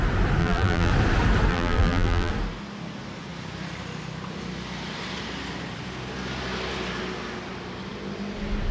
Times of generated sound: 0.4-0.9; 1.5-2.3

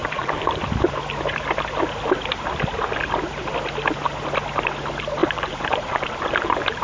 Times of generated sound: 0.0-0.6; 5.2-6.8

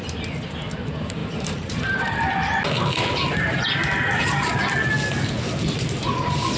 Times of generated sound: 1.2-2.6

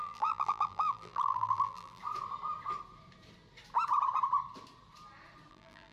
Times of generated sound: 0.0-2.0; 5.5-5.9

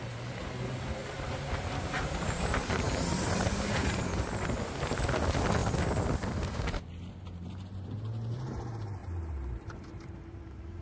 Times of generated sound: 1.0-3.5; 9.0-10.8

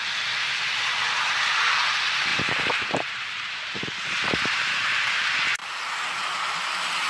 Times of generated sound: 1.0-1.8; 2.3-5.0